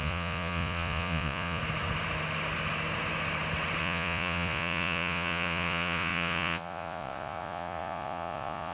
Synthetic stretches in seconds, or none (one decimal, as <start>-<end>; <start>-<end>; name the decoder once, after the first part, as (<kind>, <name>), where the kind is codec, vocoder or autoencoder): 0.0-1.6 (vocoder, Vocos); 3.8-8.7